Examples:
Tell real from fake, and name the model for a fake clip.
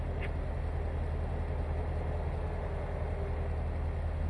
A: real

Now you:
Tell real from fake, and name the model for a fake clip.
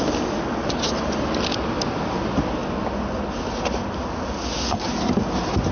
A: real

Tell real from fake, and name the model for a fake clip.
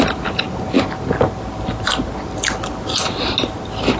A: real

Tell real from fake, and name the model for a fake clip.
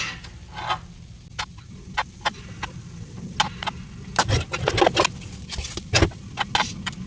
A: real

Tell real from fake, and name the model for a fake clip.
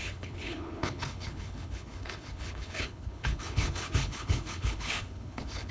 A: fake, codec, HILCodec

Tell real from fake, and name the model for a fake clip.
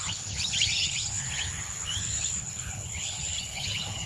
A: fake, codec, HILCodec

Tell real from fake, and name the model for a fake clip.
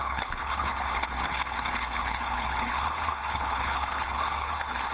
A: fake, codec, HILCodec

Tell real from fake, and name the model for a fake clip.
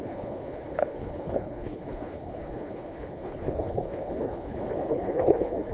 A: fake, codec, HILCodec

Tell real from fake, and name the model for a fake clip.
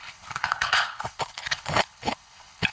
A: fake, codec, HILCodec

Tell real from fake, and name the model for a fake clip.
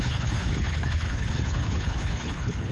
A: fake, codec, HILCodec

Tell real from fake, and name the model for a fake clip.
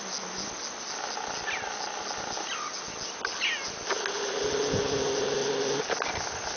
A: real